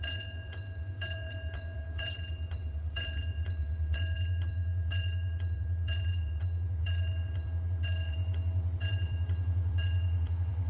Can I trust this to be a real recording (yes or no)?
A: no